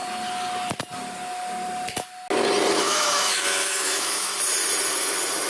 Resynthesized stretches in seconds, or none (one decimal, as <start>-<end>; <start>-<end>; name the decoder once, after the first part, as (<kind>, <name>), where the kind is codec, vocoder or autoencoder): 2.8-4.3 (autoencoder, DAC-VAE)